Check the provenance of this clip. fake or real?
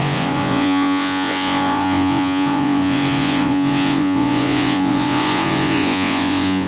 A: fake